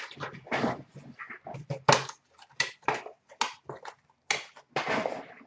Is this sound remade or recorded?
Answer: recorded